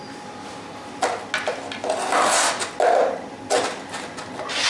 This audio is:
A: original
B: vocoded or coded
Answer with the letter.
A